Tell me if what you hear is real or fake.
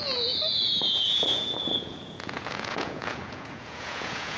fake